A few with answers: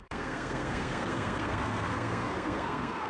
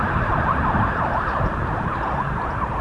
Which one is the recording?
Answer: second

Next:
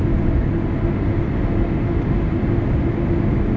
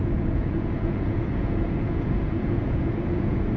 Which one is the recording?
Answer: first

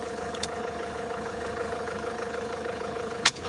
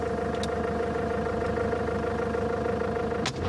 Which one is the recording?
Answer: second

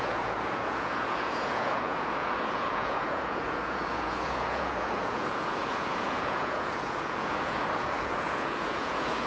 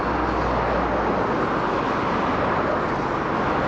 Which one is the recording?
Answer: second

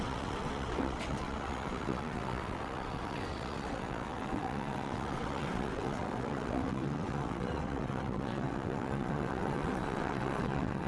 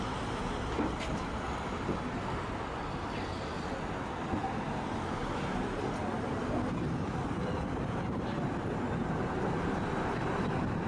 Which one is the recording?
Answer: second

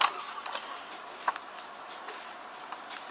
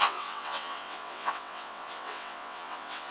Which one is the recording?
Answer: first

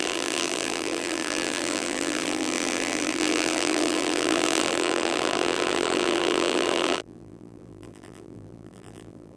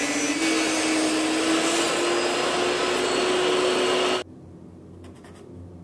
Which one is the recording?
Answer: second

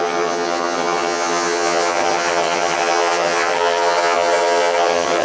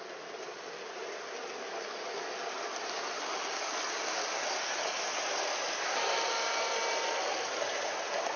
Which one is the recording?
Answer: second